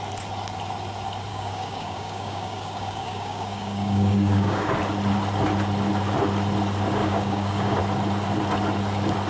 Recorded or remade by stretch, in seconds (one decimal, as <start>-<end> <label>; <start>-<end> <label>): 0.0-1.3 recorded; 1.3-4.7 remade; 4.7-7.0 recorded; 7.0-7.8 remade; 7.8-9.3 recorded

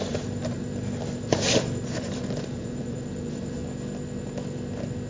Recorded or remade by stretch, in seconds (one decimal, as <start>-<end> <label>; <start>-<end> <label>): 0.0-3.6 remade; 3.6-5.1 recorded

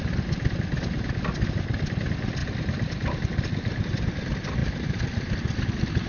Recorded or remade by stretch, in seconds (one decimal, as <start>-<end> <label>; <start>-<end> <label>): 0.0-2.4 recorded; 2.4-4.1 remade; 4.1-4.6 recorded; 4.6-5.6 remade; 5.6-6.1 recorded

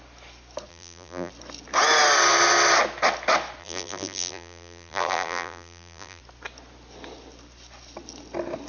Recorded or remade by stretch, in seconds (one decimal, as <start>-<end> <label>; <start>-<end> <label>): 0.0-0.7 recorded; 0.7-1.3 remade; 1.3-3.6 recorded; 3.6-6.2 remade; 6.2-8.7 recorded

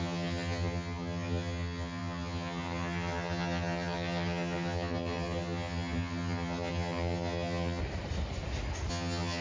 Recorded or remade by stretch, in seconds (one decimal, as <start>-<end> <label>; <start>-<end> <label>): 0.0-7.8 remade; 7.8-8.9 recorded; 8.9-9.4 remade